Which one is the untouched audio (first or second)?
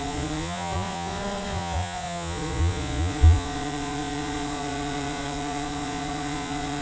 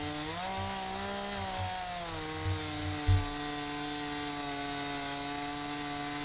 second